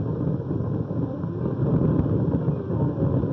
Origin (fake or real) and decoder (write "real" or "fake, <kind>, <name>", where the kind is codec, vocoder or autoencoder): real